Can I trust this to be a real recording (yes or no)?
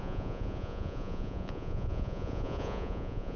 no